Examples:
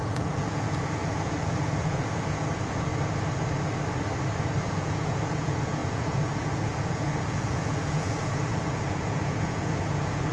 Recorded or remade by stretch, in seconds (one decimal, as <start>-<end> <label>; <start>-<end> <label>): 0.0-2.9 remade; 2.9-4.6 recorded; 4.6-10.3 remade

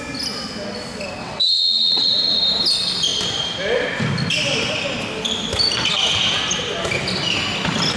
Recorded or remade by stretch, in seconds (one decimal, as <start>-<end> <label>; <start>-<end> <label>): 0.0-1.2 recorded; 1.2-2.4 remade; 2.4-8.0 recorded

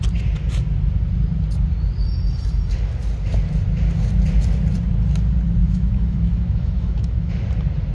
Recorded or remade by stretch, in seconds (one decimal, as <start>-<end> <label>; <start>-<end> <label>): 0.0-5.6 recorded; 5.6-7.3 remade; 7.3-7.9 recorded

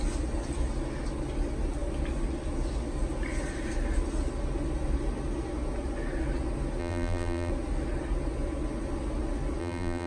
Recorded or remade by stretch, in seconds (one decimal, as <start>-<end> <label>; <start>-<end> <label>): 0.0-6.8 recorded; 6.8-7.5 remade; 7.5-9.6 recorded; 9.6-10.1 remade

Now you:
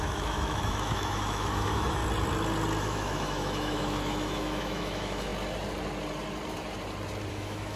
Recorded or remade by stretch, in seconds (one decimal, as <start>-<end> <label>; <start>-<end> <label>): 0.0-2.0 remade; 2.0-2.8 recorded; 2.8-5.3 remade; 5.3-7.3 recorded; 7.3-7.8 remade

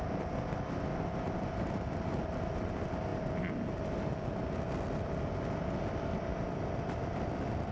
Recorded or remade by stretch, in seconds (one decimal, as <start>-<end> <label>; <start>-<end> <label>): 0.0-7.7 recorded

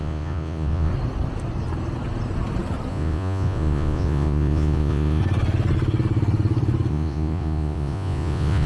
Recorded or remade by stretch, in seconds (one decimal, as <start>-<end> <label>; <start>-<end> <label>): 0.0-0.9 remade; 0.9-2.9 recorded; 2.9-5.2 remade; 5.2-6.9 recorded; 6.9-8.7 remade

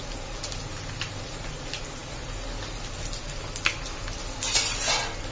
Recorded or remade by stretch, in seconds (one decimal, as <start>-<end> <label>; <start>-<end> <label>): 0.0-5.3 recorded